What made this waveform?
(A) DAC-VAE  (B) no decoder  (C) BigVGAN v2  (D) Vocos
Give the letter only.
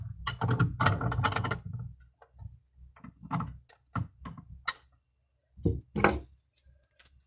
B